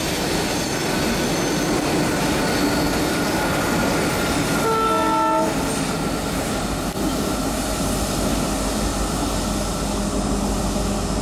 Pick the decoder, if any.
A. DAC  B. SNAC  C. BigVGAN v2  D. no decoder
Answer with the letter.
D